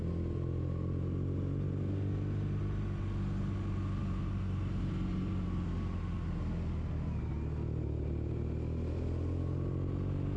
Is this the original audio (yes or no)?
yes